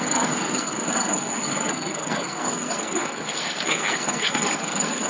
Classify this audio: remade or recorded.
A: remade